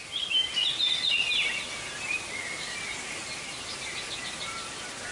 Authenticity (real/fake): real